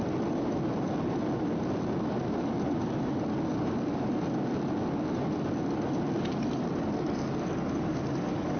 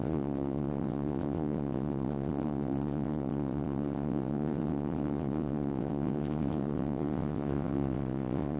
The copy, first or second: second